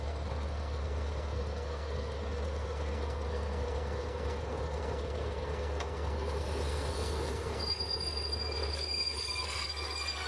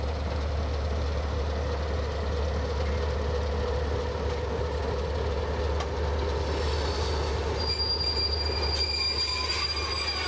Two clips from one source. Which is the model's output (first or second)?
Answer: first